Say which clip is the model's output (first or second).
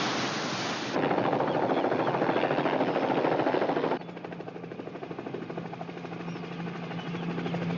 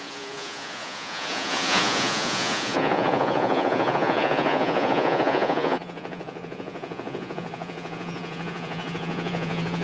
second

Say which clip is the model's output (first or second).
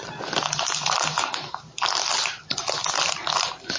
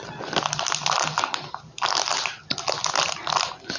first